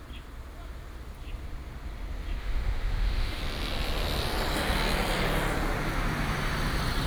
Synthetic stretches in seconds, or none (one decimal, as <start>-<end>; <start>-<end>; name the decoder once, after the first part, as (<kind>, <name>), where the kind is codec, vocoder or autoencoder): 2.4-3.4 (autoencoder, DAC-VAE)